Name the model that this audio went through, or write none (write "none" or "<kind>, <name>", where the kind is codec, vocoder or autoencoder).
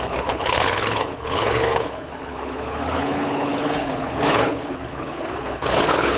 codec, HILCodec